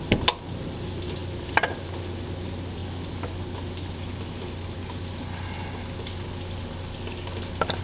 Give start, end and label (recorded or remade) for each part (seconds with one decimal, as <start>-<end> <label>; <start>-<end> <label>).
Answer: 0.0-7.8 recorded